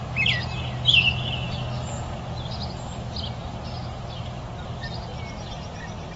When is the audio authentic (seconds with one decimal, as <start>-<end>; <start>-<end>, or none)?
0.0-6.2